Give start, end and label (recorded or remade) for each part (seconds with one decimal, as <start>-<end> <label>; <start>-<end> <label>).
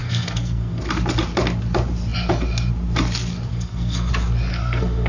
0.0-0.8 remade; 0.8-3.5 recorded; 3.5-4.1 remade; 4.1-4.5 recorded; 4.5-5.1 remade